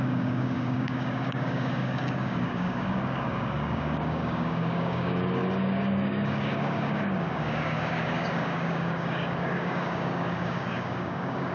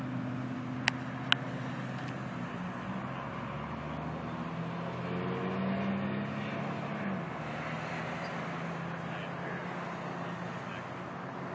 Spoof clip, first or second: first